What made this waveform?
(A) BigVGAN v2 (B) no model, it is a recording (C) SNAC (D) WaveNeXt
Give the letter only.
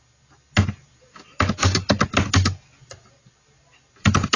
B